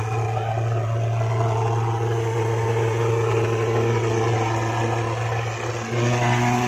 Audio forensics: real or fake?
real